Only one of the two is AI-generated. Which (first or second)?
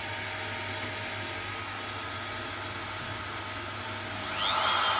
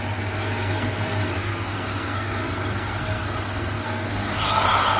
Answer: second